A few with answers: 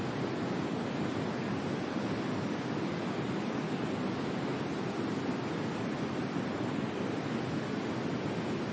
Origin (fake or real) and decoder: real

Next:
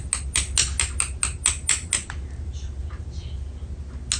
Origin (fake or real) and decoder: real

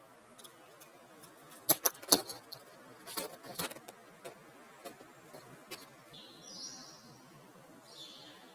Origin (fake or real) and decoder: real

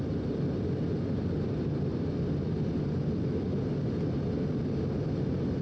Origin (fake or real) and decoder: real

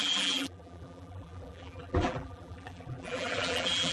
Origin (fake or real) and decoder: fake, vocoder, BigVGAN v2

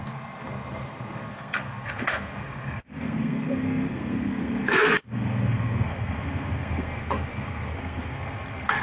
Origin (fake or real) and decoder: fake, codec, SNAC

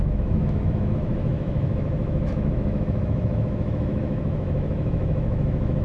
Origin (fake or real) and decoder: fake, autoencoder, DAC-VAE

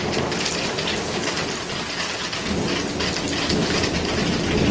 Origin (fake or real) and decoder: real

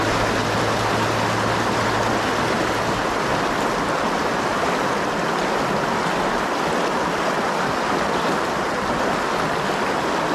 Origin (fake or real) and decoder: real